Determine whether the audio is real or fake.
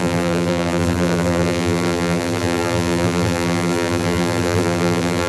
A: fake